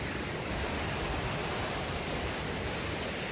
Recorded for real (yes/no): yes